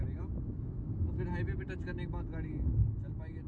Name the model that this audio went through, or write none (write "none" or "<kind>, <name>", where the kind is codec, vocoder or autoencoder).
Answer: none